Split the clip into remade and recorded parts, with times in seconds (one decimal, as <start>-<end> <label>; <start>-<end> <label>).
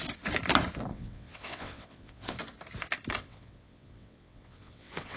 0.0-0.9 recorded; 0.9-2.4 remade; 2.4-3.2 recorded; 3.2-5.2 remade